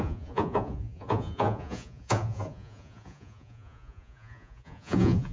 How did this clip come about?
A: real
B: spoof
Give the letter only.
B